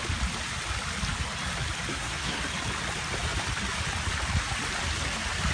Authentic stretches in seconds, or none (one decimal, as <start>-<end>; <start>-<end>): 0.0-1.9; 2.4-5.5